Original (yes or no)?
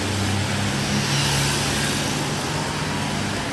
yes